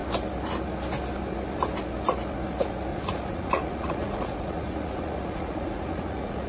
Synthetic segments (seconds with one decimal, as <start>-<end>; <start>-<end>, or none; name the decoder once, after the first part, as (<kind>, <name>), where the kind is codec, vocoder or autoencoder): 2.9-6.5 (vocoder, Vocos)